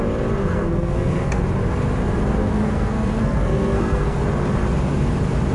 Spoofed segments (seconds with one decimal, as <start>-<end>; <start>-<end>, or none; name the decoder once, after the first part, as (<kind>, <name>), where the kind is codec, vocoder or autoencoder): 0.4-1.4 (codec, SNAC); 2.4-4.2